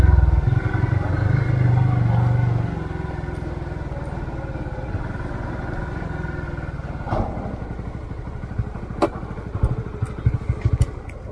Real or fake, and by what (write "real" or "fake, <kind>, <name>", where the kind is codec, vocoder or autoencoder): real